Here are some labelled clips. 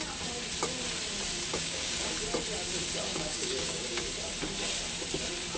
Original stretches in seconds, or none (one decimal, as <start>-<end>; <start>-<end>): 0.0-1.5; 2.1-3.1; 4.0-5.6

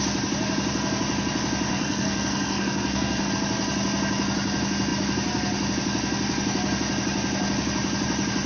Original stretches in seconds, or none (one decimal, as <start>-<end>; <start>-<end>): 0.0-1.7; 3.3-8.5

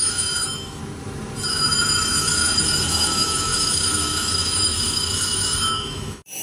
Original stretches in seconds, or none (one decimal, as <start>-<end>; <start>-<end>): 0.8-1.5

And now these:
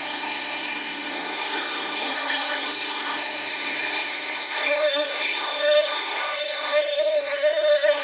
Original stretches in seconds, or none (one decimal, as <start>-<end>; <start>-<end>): none